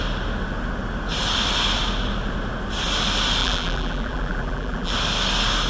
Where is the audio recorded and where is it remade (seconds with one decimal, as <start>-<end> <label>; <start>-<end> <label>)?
0.0-3.4 recorded; 3.4-4.9 remade; 4.9-5.7 recorded